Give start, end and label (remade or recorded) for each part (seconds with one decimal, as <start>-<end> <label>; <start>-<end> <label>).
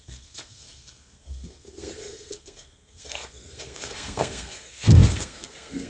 0.0-5.9 remade